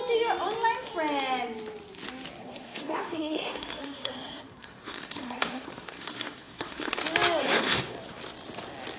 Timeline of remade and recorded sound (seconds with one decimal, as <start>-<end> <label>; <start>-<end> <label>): 0.0-2.4 recorded; 2.4-7.0 remade; 7.0-7.4 recorded; 7.4-8.2 remade; 8.2-9.0 recorded